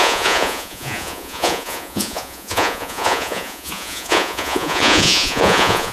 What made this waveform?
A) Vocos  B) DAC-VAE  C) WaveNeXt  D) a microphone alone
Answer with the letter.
A